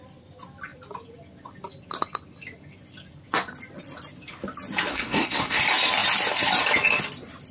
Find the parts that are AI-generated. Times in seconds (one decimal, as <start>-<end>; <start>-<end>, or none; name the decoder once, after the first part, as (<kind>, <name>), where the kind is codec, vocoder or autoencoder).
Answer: 4.9-5.6 (codec, SNAC)